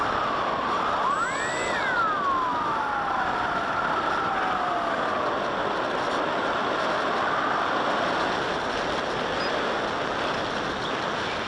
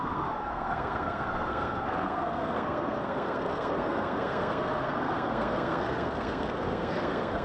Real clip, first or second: first